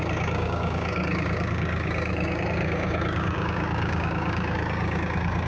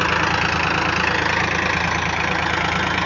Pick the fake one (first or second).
first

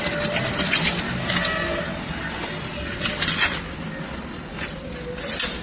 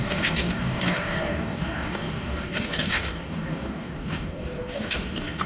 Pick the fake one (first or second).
second